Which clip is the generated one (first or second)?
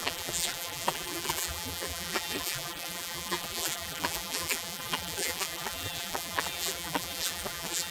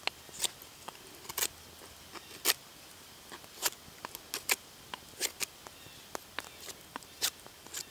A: first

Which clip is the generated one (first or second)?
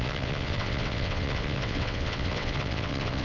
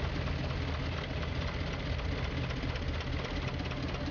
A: first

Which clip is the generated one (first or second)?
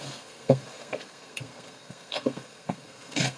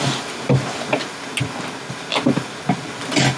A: first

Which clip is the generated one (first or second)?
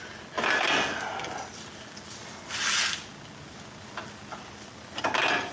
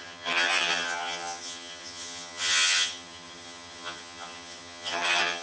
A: second